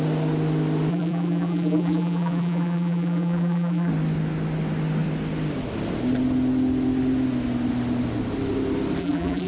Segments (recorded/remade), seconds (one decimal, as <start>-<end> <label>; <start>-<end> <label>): 0.0-0.9 recorded; 0.9-3.9 remade; 3.9-9.0 recorded; 9.0-9.5 remade